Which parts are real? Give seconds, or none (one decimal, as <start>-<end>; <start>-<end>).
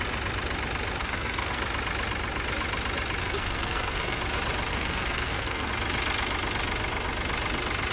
0.0-1.0; 1.6-3.2; 4.2-4.7; 5.7-7.9